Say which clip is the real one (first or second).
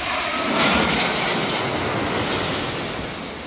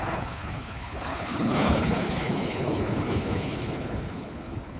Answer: first